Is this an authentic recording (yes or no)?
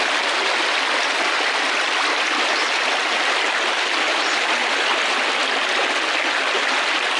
yes